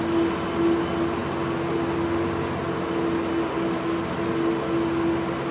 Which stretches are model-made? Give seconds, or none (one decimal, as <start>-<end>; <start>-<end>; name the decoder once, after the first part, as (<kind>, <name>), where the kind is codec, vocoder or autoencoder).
none